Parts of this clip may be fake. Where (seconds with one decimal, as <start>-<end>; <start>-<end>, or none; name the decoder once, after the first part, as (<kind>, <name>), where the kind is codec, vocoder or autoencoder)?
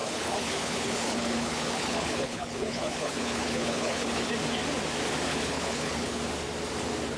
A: 0.0-4.3 (codec, HILCodec); 5.3-6.2